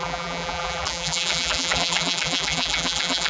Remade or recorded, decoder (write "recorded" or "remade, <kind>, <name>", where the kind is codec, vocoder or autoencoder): remade, vocoder, BigVGAN v2